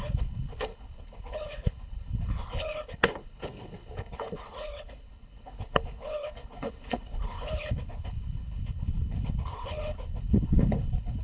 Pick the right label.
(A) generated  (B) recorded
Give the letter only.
A